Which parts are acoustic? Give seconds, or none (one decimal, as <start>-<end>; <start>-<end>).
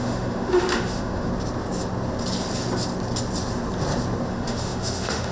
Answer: 1.3-4.3